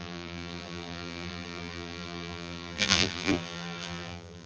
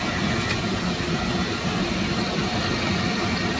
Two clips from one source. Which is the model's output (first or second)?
first